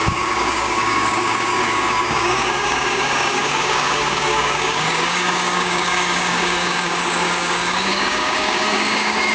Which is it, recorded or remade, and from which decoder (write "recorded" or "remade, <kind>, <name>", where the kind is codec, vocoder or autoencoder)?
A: remade, codec, DAC